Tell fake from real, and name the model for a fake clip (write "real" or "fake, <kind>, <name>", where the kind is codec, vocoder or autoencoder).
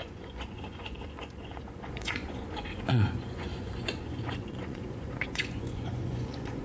fake, vocoder, Vocos